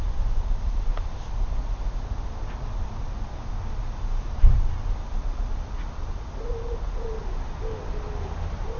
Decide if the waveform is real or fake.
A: real